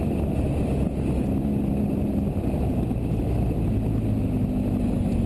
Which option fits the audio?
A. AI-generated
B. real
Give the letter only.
B